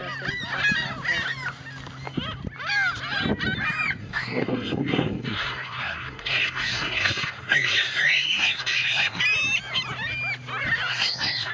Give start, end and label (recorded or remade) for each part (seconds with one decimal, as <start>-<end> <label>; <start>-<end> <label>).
0.0-4.0 recorded; 4.0-9.2 remade; 9.2-10.9 recorded; 10.9-11.5 remade